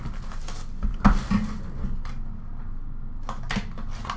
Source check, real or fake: real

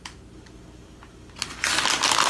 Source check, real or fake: real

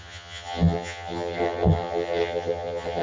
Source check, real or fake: fake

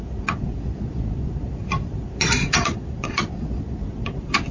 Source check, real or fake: fake